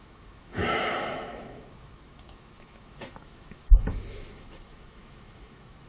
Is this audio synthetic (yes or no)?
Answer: yes